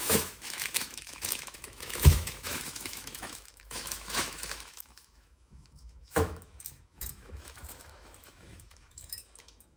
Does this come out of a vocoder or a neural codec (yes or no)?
yes